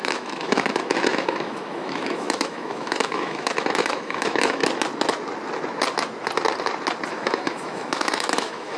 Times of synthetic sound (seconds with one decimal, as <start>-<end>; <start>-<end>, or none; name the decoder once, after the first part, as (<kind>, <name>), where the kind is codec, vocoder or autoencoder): 0.0-4.6 (autoencoder, DAC-VAE); 7.1-8.8